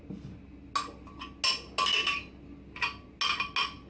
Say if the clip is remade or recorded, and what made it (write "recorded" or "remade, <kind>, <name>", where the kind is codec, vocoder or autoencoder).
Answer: recorded